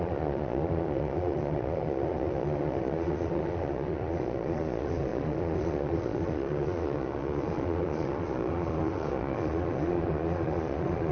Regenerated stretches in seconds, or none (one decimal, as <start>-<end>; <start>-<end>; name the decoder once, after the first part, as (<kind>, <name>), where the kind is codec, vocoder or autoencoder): 0.0-11.1 (vocoder, Vocos)

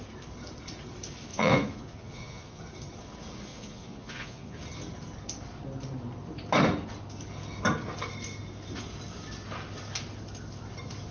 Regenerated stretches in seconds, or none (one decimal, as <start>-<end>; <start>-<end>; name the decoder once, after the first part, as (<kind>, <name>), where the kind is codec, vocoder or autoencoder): 1.3-2.6 (vocoder, Vocos); 3.5-4.6

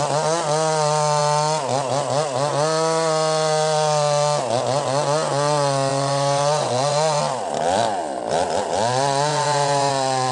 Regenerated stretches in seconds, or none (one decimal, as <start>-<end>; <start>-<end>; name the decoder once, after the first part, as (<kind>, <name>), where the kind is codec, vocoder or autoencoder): 5.9-7.2 (vocoder, Vocos); 9.3-9.9

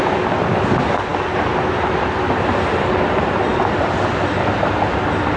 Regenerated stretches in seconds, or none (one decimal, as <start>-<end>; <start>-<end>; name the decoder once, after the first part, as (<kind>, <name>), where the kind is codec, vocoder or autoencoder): none

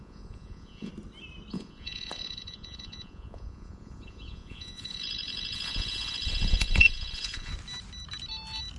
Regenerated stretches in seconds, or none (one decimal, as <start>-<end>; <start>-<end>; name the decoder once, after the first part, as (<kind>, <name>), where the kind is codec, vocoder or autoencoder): 0.0-0.9 (vocoder, Vocos); 1.5-7.5

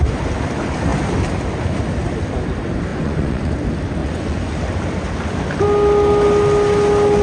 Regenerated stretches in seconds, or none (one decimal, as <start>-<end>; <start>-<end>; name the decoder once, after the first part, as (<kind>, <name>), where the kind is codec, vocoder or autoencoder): 2.9-3.5 (vocoder, Vocos); 4.0-4.6

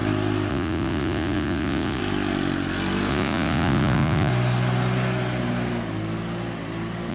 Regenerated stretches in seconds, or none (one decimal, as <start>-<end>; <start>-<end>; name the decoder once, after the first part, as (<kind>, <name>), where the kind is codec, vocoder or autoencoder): 0.5-2.0 (vocoder, Vocos); 3.1-4.3